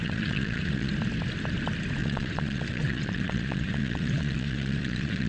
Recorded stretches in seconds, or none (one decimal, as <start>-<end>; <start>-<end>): 0.9-2.0

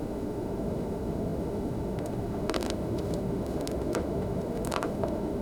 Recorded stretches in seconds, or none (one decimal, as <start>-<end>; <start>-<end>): none

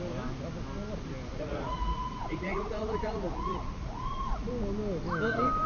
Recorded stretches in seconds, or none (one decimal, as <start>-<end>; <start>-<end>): 0.0-1.3; 4.5-5.7

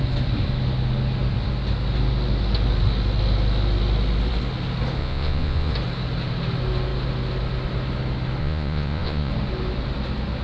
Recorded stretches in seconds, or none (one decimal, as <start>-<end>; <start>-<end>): 0.0-5.0; 5.7-8.4; 9.3-10.4

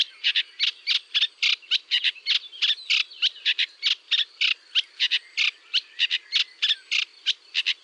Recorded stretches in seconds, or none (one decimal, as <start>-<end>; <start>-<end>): 0.0-7.8